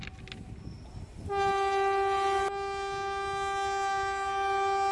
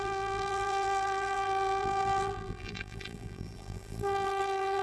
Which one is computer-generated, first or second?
second